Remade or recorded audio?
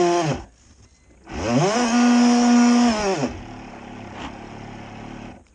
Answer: recorded